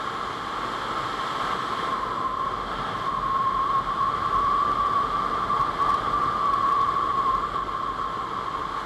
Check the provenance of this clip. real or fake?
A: real